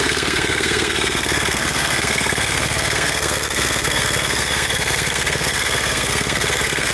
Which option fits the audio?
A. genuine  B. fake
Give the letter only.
B